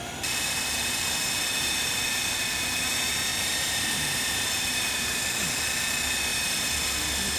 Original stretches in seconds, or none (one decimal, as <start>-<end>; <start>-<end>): 0.0-3.3; 5.3-6.3